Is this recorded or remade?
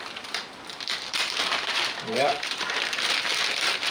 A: remade